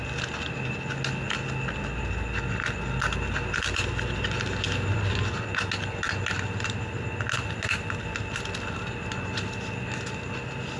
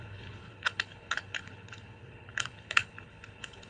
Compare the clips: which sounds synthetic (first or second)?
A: second